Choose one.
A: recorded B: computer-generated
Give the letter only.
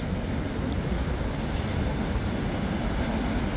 A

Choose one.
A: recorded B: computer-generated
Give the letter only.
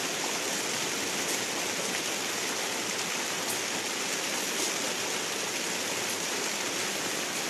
A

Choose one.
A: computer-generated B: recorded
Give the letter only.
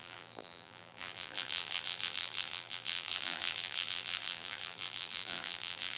A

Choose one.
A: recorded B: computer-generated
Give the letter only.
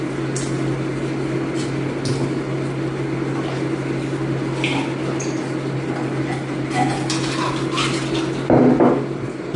A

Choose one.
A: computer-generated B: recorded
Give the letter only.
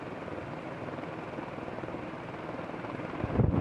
B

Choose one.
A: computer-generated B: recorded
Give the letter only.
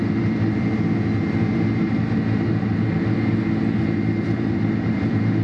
A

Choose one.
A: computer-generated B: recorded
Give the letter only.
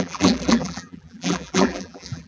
A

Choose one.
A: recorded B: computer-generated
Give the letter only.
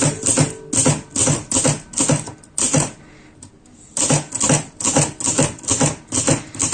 A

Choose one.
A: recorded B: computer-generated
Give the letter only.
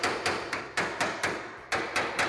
B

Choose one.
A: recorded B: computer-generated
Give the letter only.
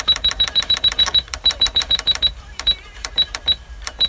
B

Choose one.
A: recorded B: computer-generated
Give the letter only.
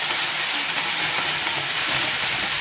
B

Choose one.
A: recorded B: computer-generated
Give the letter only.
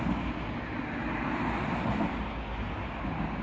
A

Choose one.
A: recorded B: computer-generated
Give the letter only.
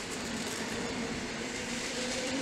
B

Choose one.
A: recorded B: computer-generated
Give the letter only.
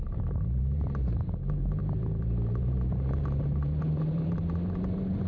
B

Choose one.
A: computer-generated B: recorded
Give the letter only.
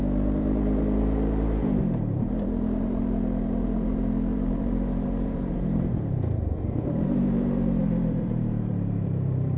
A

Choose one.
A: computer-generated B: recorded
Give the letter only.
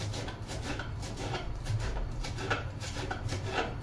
A